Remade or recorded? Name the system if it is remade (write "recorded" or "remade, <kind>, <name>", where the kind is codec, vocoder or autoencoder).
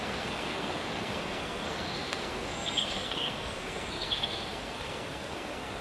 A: remade, codec, SNAC